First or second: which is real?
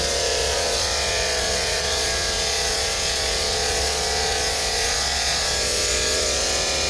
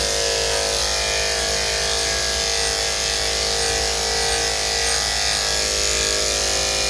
second